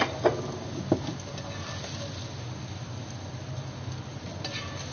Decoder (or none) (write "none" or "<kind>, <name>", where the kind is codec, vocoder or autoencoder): none